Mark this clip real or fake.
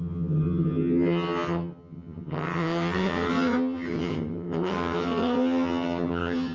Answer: fake